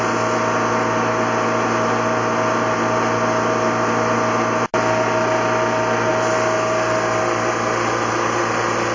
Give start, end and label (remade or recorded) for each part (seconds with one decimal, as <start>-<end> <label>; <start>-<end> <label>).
0.0-8.9 recorded